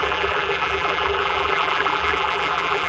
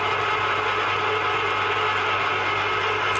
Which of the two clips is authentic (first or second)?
second